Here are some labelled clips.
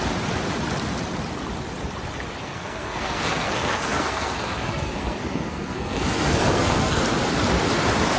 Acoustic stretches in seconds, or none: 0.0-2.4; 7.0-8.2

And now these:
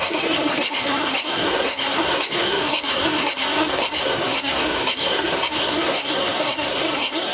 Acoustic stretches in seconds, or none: none